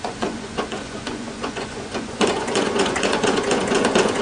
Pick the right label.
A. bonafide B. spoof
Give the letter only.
B